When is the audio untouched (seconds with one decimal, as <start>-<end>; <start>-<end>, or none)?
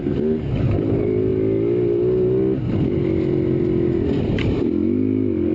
0.0-5.5